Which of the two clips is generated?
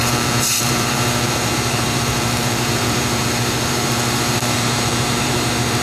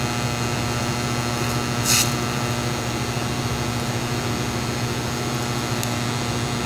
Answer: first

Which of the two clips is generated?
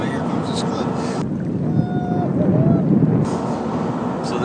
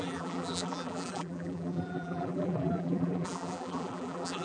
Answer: second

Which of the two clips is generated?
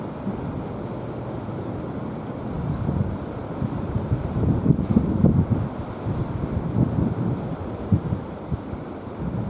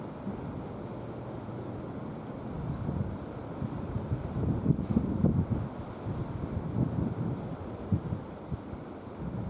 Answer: first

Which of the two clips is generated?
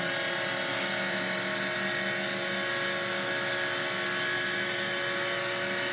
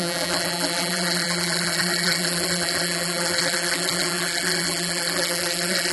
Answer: second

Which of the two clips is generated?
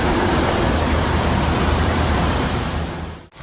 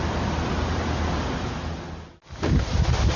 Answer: first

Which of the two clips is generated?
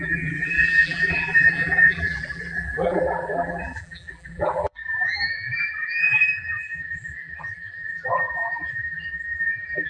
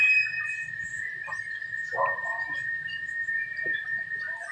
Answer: first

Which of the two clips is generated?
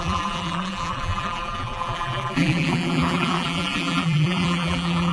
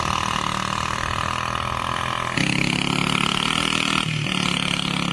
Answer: first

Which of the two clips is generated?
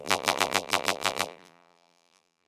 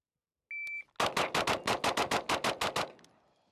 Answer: first